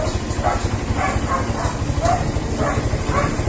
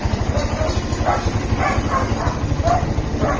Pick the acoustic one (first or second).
first